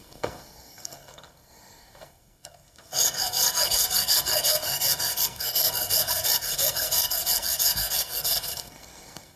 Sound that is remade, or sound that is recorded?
remade